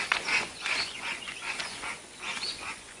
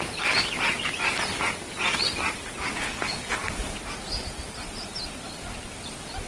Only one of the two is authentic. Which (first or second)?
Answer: second